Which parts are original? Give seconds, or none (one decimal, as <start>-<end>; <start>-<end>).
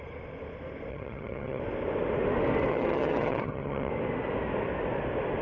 0.0-0.9; 1.6-2.7; 3.9-5.4